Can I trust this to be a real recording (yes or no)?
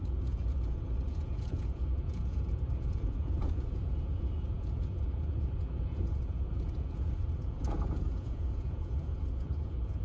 no